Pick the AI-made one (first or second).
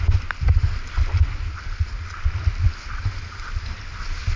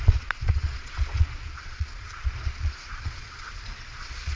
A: second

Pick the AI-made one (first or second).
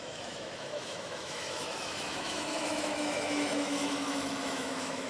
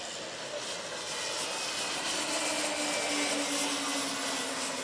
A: first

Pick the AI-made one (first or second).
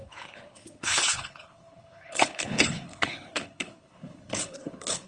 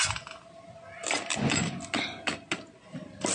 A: first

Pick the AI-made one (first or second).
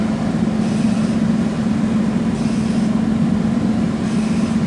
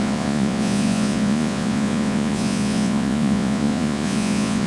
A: second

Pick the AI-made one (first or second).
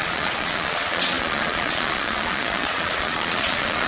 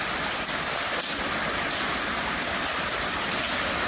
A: first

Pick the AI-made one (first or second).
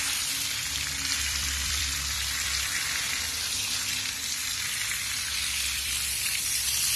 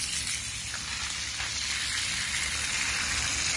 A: first